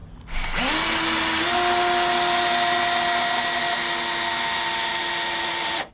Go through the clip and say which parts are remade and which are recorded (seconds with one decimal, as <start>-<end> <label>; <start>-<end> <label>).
0.0-4.9 recorded; 4.9-5.9 remade